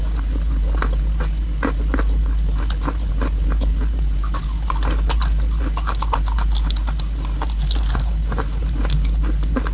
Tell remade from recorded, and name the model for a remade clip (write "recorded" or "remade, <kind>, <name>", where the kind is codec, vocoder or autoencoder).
recorded